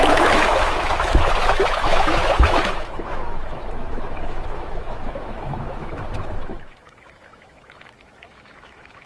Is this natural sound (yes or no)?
no